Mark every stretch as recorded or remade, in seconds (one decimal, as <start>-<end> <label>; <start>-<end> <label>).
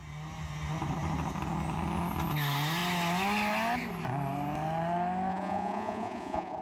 0.0-5.3 recorded; 5.3-6.6 remade